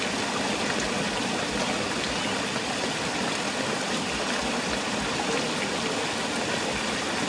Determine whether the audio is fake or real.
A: real